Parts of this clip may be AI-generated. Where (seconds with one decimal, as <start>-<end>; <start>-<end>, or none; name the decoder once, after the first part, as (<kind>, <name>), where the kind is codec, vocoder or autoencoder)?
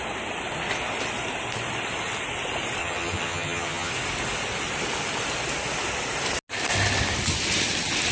2.8-3.9 (vocoder, HiFi-GAN)